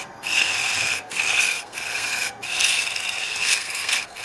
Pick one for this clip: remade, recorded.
remade